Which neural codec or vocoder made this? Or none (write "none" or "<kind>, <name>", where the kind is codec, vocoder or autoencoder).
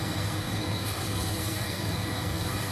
codec, SNAC